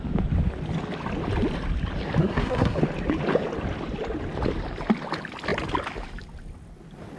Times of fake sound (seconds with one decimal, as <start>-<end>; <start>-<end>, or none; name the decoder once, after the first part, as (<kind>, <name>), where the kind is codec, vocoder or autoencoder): 2.2-2.8 (codec, SNAC)